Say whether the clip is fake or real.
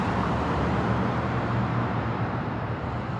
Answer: fake